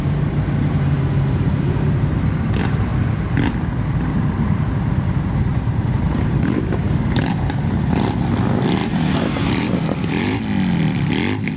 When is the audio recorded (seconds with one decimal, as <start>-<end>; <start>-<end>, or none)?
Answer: 0.0-5.5; 7.7-8.8; 10.4-11.6